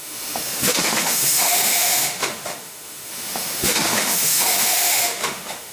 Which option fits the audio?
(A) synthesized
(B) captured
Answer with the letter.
A